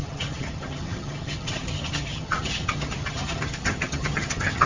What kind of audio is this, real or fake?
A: fake